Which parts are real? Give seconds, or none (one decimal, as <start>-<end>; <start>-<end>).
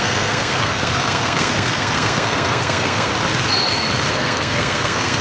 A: 3.1-4.1